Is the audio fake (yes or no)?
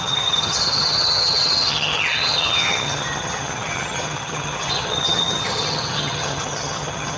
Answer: yes